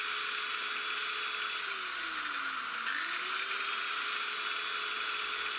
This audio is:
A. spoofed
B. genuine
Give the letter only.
B